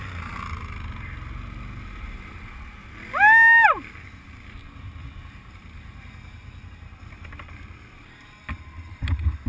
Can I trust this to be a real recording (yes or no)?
yes